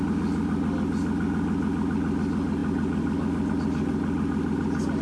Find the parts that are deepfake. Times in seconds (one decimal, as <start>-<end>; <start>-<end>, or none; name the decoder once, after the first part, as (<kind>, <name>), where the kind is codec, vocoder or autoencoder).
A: none